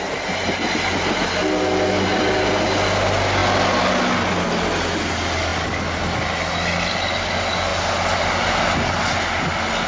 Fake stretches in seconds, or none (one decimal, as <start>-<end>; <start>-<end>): none